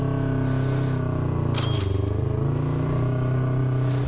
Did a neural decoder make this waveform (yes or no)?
no